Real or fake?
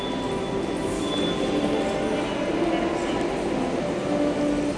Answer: real